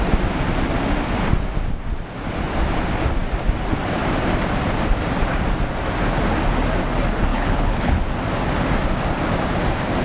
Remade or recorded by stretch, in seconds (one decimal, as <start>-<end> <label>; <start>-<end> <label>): 0.0-7.3 recorded; 7.3-8.0 remade; 8.0-10.0 recorded